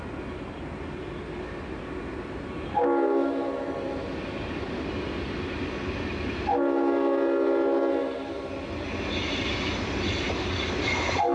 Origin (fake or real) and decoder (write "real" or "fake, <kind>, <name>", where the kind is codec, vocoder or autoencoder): real